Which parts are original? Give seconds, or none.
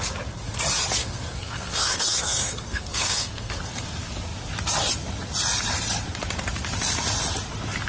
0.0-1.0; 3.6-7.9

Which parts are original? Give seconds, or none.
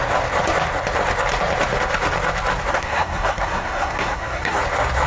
0.0-2.7; 4.6-5.1